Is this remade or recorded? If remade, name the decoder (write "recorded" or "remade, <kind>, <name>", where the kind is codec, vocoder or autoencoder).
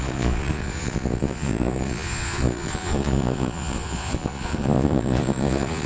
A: remade, vocoder, Vocos